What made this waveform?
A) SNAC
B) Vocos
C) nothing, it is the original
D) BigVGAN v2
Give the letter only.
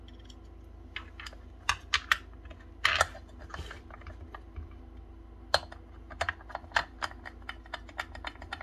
C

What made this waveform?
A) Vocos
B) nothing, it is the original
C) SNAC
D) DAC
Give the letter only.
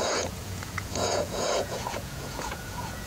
A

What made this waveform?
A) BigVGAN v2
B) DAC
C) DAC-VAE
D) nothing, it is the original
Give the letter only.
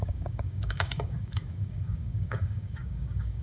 B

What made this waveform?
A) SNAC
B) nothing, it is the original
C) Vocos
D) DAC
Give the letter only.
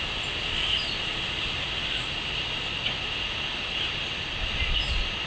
B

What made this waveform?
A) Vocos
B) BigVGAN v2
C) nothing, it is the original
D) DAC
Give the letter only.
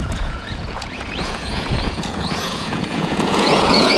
A